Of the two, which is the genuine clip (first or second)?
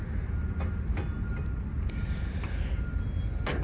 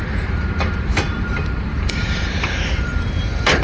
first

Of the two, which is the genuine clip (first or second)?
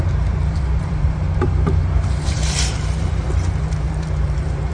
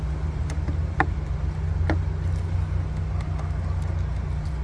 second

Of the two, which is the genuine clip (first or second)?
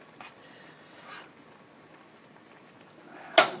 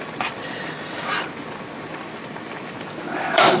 first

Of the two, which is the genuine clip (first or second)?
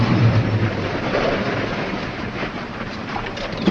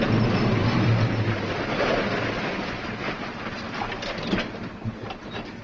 second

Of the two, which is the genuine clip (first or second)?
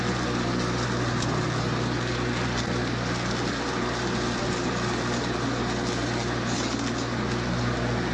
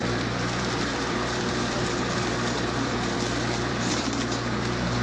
first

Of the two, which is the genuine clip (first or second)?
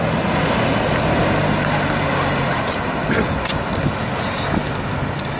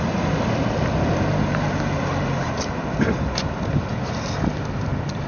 first